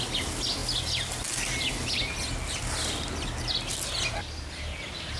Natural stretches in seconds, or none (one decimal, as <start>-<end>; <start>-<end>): 0.0-5.2